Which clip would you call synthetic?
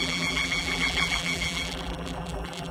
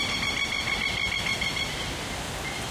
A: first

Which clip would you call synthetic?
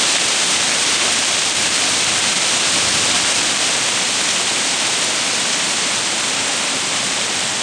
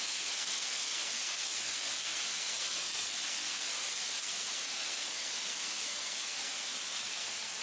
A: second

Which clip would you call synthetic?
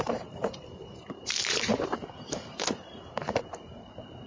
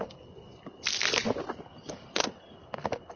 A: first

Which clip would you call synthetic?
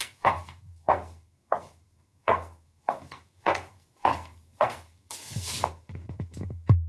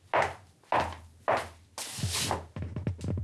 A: first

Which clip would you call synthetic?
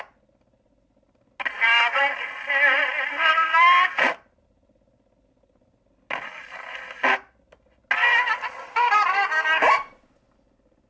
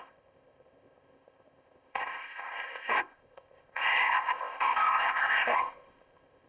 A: second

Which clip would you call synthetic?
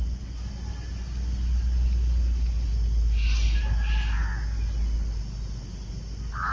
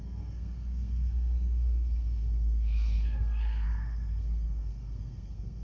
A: second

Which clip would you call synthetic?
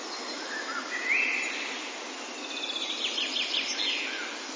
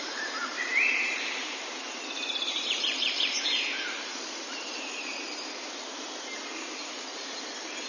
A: second